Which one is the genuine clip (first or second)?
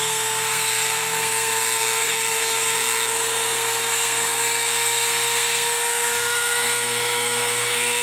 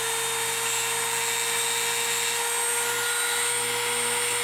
second